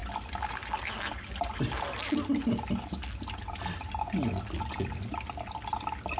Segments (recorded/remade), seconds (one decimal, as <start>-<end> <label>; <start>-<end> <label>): 0.0-6.2 recorded